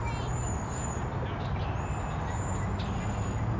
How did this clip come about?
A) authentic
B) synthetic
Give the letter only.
A